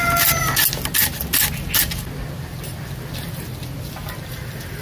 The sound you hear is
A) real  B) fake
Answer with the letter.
A